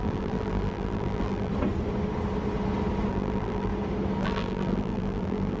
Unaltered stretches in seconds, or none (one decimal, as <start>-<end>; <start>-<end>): 1.5-3.1; 3.7-4.2